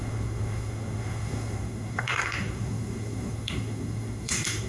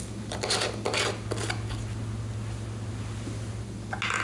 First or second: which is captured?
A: second